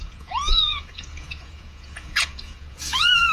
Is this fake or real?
fake